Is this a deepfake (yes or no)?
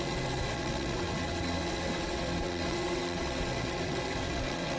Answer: yes